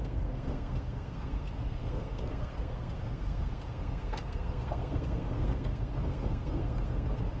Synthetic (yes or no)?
yes